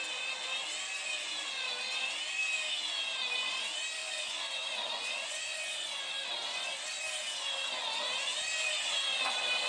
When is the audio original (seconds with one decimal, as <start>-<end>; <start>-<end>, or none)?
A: 0.0-4.0; 6.1-9.7